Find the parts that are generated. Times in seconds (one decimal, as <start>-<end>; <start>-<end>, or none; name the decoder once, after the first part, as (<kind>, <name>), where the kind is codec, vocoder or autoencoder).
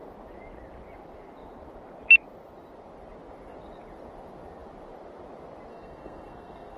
5.7-6.8 (codec, SNAC)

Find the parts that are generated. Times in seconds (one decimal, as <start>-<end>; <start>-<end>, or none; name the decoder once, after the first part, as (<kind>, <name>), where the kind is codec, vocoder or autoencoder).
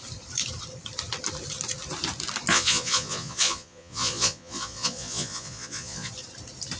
2.5-6.1 (vocoder, Vocos)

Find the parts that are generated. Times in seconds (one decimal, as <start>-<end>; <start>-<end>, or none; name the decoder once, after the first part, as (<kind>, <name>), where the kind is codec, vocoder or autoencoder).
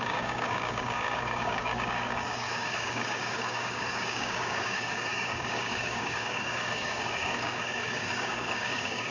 0.0-9.1 (codec, DAC)